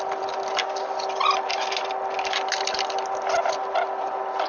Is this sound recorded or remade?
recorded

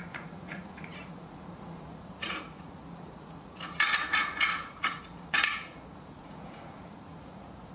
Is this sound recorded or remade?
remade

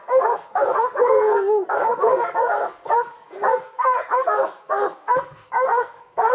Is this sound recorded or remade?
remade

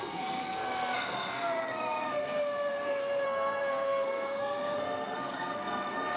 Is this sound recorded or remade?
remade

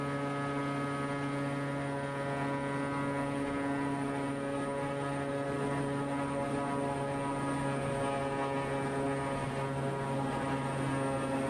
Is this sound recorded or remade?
recorded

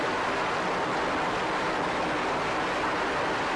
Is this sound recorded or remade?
recorded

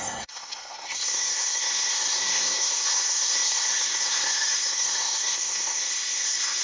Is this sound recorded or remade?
remade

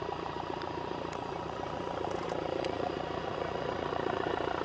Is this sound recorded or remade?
remade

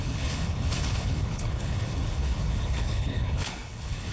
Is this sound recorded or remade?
remade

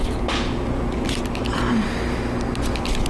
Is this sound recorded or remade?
recorded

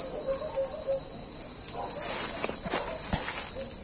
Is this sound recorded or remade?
recorded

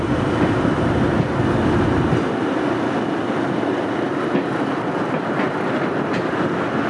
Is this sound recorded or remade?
recorded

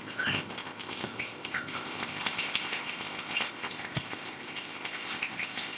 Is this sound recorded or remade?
remade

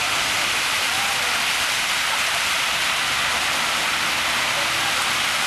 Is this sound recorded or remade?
recorded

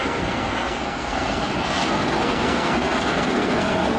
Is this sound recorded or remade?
remade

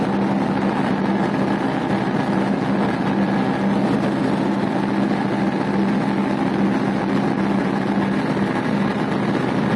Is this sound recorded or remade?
recorded